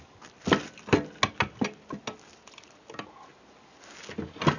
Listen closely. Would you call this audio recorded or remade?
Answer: recorded